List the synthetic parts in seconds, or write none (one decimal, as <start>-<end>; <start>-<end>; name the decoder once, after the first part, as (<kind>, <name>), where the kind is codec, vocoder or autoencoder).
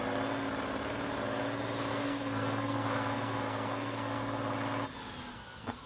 1.9-4.2 (codec, SNAC); 5.3-5.9